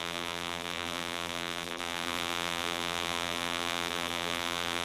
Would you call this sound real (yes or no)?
no